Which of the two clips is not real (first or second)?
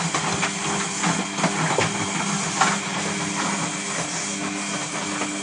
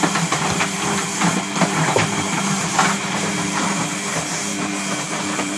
second